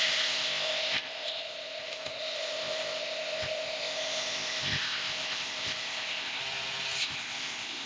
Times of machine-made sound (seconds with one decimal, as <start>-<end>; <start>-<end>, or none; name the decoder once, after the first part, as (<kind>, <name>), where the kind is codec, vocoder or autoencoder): 0.0-6.4 (codec, ZipCodec); 7.0-7.9